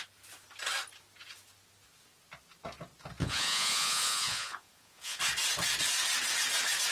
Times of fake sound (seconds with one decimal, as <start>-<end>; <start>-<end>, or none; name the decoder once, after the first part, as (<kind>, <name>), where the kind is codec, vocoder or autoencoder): 3.2-5.2 (vocoder, Vocos)